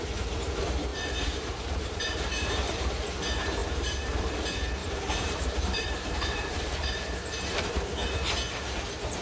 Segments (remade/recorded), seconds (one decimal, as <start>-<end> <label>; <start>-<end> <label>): 0.0-0.9 recorded; 0.9-2.9 remade; 2.9-3.6 recorded; 3.6-4.3 remade; 4.3-4.8 recorded; 4.8-7.6 remade; 7.6-9.2 recorded